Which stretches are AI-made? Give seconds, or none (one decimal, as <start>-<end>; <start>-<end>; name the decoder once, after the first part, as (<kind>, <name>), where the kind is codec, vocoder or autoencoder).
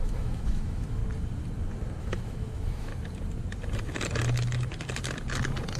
0.0-1.0 (autoencoder, DAC-VAE); 2.0-2.9